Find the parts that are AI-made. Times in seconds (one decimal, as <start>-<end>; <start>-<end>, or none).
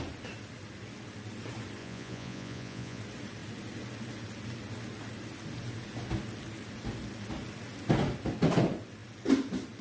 1.8-3.0